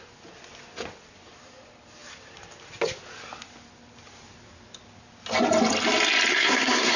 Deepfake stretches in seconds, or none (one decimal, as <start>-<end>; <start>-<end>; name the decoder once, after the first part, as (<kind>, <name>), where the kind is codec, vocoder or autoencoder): 6.3-7.0 (codec, SNAC)